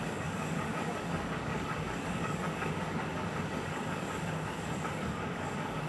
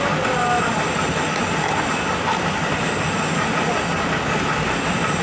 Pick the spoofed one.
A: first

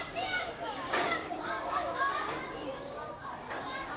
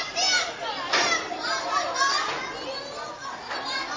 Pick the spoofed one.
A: first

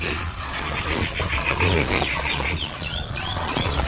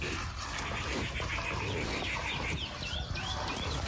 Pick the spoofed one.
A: first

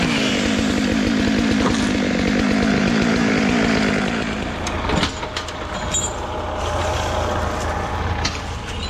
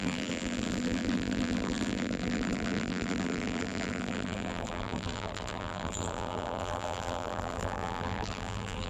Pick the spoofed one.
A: second